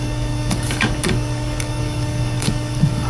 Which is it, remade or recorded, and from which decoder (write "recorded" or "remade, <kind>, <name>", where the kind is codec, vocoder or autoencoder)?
remade, codec, DAC